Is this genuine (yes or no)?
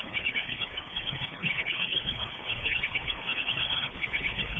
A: no